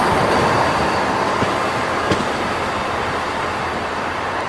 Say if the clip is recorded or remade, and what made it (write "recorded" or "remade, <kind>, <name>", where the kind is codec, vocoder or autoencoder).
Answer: remade, vocoder, BigVGAN v2